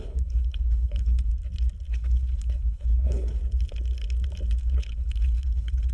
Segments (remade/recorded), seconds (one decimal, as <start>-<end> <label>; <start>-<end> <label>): 0.0-1.3 remade; 1.3-1.9 recorded; 1.9-3.4 remade; 3.4-4.6 recorded; 4.6-5.9 remade